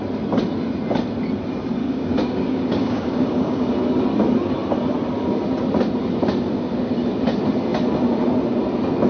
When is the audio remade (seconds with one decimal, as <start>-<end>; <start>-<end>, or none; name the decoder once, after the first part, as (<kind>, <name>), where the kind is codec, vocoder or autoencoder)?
1.8-3.7 (codec, DAC)